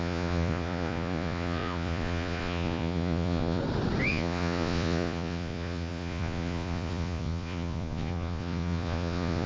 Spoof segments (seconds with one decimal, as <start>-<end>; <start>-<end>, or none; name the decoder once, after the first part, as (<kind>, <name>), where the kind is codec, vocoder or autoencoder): 0.0-3.6 (vocoder, Vocos); 4.1-9.5